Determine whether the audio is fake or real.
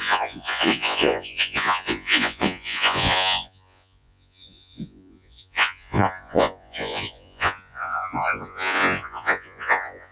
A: fake